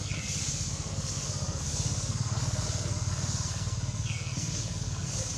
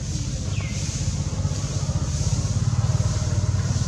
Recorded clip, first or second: second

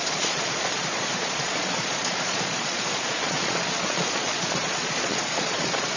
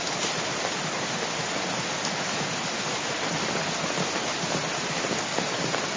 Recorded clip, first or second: second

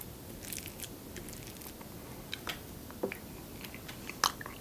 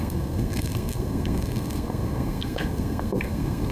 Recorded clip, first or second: first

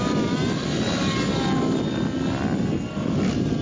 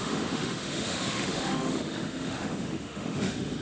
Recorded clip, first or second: first